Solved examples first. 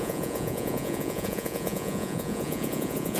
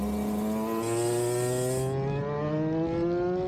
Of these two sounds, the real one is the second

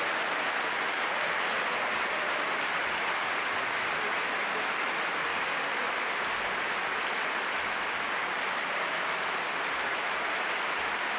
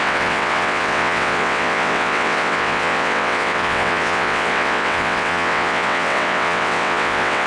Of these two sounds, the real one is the first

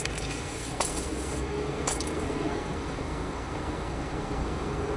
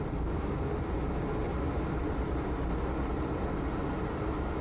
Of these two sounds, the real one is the second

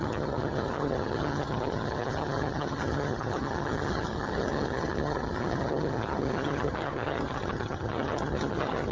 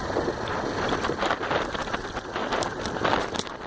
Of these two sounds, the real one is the second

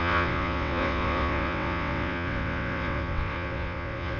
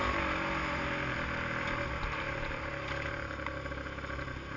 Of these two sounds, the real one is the second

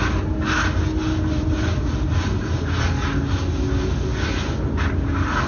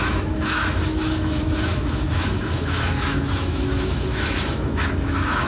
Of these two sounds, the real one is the first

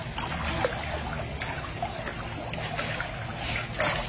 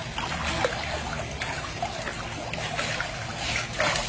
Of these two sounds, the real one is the first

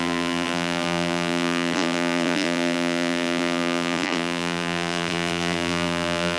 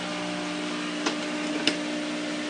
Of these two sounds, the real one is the second